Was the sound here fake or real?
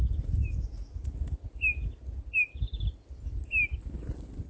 real